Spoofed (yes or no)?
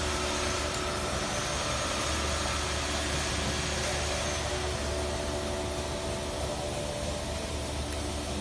no